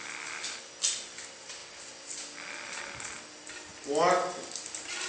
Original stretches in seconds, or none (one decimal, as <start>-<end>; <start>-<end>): 0.0-5.1